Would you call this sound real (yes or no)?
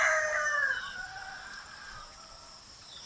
yes